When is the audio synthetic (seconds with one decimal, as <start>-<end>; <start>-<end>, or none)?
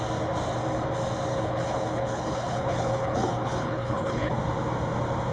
1.3-4.4